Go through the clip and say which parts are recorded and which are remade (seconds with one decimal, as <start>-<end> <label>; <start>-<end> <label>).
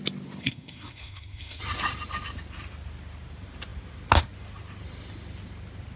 0.0-0.4 recorded; 0.4-1.6 remade; 1.6-6.0 recorded